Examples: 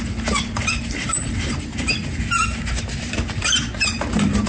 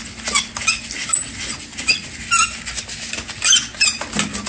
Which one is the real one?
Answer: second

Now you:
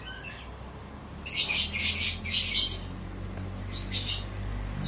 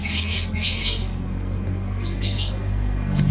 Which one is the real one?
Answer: first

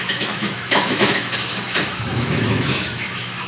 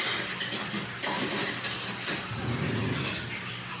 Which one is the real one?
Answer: second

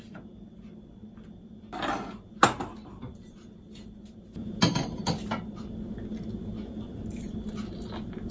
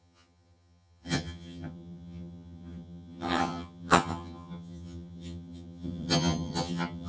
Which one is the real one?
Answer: first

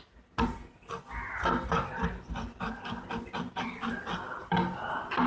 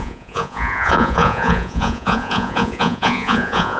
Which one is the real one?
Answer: first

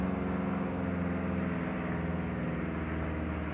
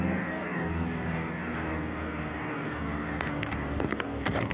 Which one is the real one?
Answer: first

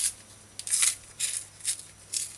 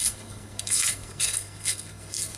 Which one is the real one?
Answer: first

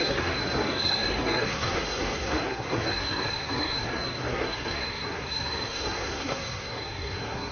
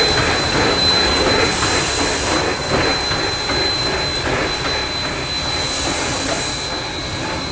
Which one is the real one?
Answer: second